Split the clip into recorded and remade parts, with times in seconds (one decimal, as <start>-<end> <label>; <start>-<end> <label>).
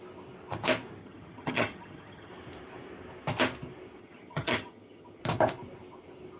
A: 0.0-1.0 recorded; 1.0-2.3 remade; 2.3-4.0 recorded; 4.0-5.2 remade; 5.2-6.4 recorded